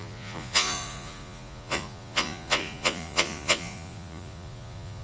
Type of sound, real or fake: fake